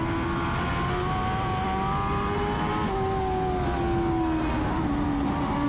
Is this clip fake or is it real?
real